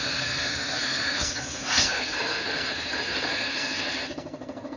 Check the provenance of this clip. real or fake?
fake